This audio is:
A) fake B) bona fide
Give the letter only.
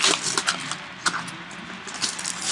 B